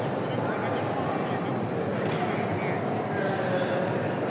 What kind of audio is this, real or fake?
real